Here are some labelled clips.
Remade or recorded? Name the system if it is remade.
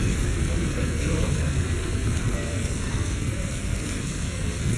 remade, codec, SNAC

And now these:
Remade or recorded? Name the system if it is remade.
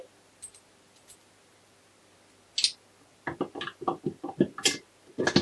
recorded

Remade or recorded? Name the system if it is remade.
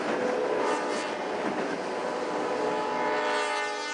recorded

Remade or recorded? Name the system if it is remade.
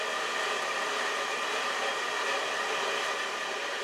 recorded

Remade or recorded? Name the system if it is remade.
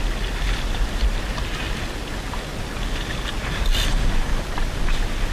recorded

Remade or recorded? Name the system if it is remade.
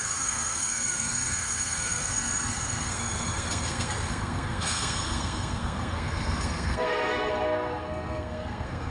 remade, codec, SNAC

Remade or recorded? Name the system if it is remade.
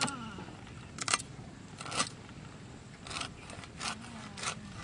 recorded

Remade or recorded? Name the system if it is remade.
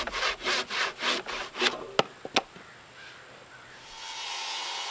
recorded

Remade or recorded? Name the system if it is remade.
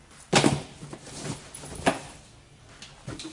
recorded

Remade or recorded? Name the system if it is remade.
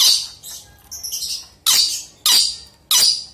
recorded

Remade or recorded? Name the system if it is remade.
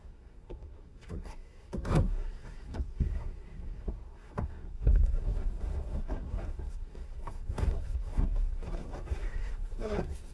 remade, codec, SNAC